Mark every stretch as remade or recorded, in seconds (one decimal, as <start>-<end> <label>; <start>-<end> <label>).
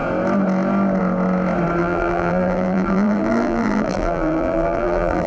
0.0-1.8 recorded; 1.8-5.3 remade